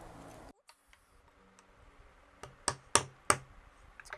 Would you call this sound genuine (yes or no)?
yes